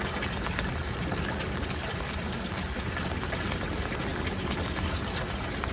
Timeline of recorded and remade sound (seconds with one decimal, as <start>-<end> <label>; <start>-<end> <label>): 0.0-5.7 recorded